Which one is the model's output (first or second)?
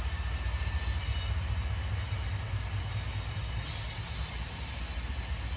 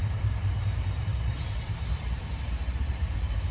second